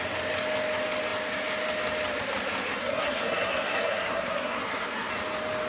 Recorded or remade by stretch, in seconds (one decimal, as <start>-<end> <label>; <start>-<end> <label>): 0.0-2.8 recorded; 2.8-5.1 remade; 5.1-5.7 recorded

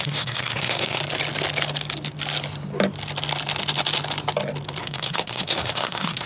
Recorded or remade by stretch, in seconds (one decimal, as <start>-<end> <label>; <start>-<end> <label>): 0.0-1.0 remade; 1.0-4.8 recorded; 4.8-6.3 remade

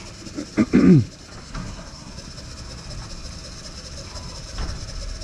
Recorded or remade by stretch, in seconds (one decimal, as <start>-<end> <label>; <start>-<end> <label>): 0.0-1.4 recorded; 1.4-2.1 remade; 2.1-5.2 recorded

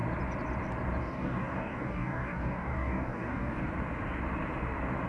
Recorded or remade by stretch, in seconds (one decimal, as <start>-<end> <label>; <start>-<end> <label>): 0.0-1.0 recorded; 1.0-3.6 remade; 3.6-5.1 recorded

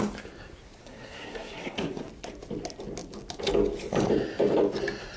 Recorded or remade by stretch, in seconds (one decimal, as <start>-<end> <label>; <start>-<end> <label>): 0.0-0.8 recorded; 0.8-2.1 remade; 2.1-5.2 recorded

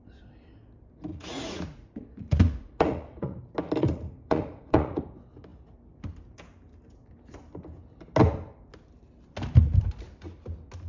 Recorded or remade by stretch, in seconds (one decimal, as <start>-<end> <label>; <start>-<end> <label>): 0.0-1.1 recorded; 1.1-3.4 remade; 3.4-3.8 recorded; 3.8-5.0 remade; 5.0-10.9 recorded

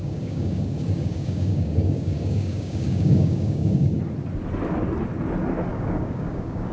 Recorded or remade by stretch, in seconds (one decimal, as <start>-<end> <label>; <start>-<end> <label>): 0.0-4.0 remade; 4.0-5.7 recorded; 5.7-6.7 remade